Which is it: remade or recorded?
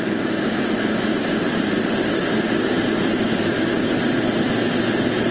recorded